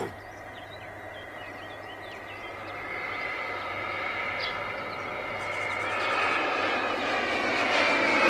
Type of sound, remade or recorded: recorded